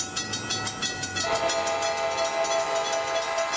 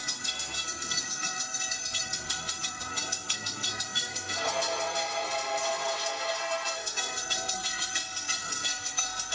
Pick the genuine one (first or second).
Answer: first